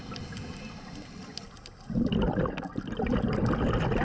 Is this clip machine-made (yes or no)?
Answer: no